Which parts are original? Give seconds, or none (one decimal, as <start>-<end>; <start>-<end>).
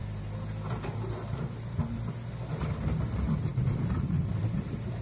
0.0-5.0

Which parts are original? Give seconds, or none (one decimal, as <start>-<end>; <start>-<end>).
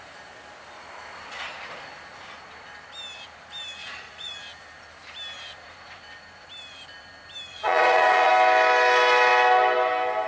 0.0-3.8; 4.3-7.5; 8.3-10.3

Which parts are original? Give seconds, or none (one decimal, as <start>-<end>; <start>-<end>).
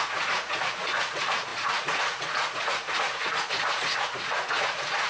none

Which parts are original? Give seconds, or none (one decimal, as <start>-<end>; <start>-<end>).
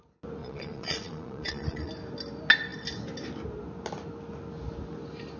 0.0-0.4; 1.9-5.4